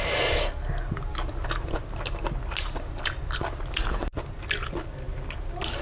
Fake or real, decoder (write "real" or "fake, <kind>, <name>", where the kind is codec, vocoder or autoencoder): real